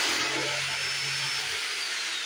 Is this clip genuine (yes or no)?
yes